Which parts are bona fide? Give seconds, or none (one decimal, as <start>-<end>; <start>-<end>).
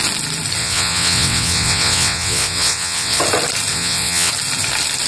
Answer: 0.0-0.6; 3.2-3.7; 4.3-5.1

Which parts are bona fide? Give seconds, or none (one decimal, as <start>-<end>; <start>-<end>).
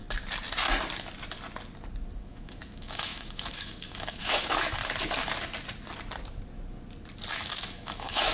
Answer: 0.0-2.2; 4.8-7.3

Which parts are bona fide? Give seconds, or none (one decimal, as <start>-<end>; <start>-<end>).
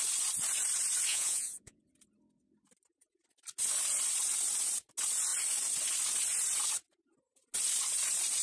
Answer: 0.0-1.1; 1.8-8.4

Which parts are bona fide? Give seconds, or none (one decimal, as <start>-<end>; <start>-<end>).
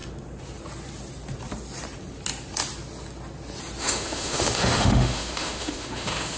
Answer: 0.0-3.8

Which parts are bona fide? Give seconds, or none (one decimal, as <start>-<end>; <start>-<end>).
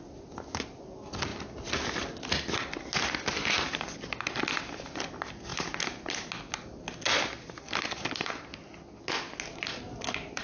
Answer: 0.0-10.4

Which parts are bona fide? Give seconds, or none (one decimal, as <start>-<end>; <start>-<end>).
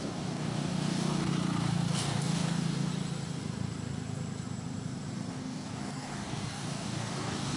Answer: 1.3-1.9; 2.9-5.3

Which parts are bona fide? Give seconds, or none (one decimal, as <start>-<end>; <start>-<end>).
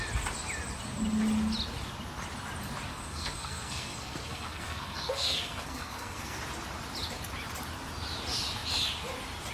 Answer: 0.0-2.9; 6.4-9.5